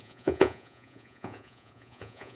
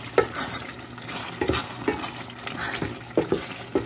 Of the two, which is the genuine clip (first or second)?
second